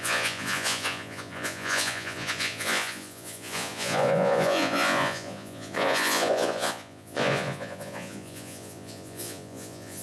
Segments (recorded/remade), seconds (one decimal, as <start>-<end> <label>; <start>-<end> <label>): 0.0-10.0 remade